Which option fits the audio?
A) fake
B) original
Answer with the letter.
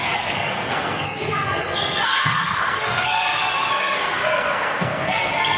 A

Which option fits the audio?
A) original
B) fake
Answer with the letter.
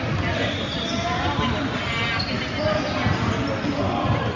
A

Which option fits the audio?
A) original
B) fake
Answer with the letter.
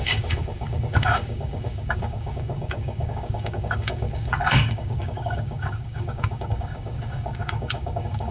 B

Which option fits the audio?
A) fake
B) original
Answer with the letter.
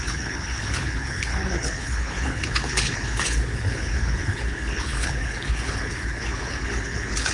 A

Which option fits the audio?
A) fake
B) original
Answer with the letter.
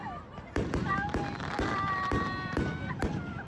A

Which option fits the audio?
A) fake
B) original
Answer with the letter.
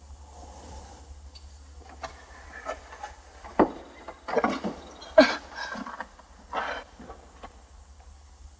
B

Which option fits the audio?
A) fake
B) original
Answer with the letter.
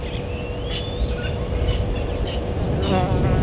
B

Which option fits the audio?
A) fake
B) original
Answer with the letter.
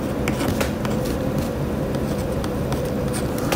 B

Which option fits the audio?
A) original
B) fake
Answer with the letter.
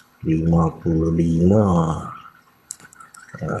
B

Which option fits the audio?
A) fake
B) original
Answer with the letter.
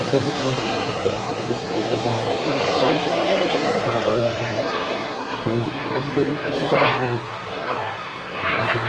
A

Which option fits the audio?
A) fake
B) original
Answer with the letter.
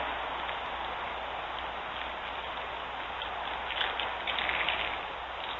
B